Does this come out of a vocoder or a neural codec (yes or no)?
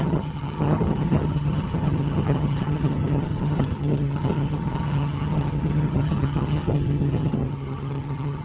yes